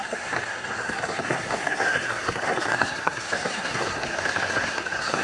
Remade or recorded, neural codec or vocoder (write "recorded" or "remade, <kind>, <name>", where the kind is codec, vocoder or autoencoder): remade, codec, SNAC